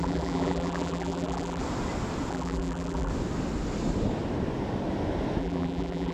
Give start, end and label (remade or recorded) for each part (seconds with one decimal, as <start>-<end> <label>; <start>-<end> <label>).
0.0-1.6 remade; 1.6-2.3 recorded; 2.3-3.1 remade; 3.1-5.4 recorded; 5.4-6.1 remade